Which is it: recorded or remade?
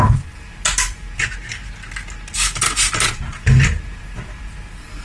recorded